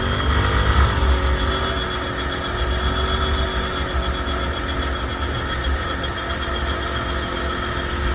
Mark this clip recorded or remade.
recorded